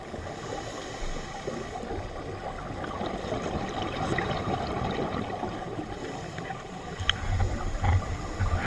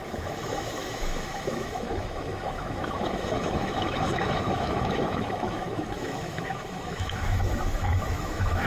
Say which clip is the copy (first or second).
second